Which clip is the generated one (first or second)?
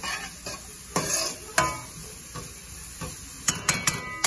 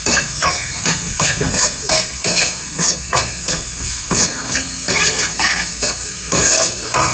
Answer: second